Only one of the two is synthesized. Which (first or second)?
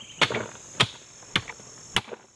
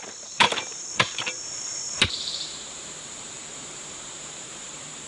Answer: second